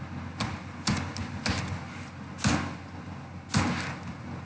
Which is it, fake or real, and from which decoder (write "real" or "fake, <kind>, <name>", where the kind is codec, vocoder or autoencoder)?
real